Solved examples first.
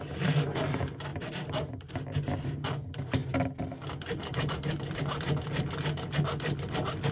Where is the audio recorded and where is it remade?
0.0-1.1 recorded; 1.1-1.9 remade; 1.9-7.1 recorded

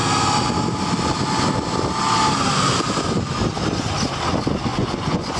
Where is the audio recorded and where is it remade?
0.0-4.7 recorded; 4.7-5.4 remade